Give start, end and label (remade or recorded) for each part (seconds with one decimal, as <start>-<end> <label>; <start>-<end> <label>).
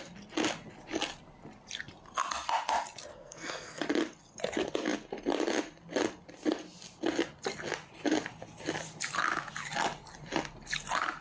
0.0-3.1 recorded; 3.1-3.8 remade; 3.8-11.2 recorded